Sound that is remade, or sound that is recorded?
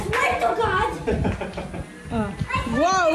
recorded